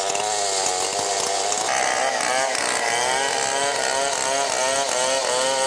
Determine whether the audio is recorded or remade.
recorded